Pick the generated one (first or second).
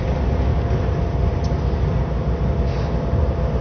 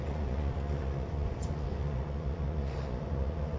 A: second